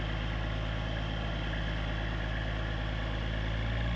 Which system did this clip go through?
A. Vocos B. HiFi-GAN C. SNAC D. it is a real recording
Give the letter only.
D